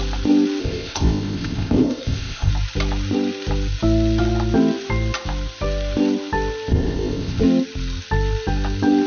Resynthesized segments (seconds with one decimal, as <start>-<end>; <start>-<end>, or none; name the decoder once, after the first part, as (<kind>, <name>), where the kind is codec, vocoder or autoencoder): 0.6-2.5 (codec, ZipCodec); 6.7-7.4